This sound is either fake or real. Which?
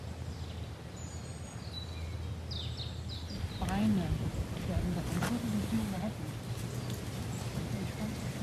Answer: real